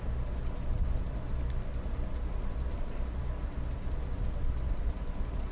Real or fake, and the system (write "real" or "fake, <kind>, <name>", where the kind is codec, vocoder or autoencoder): real